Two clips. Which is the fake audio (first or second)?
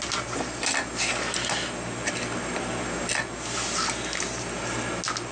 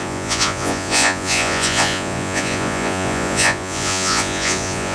second